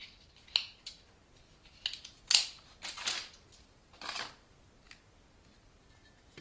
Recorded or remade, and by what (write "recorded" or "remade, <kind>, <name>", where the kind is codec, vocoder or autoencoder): recorded